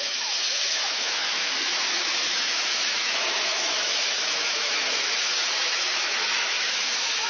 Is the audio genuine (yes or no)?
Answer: no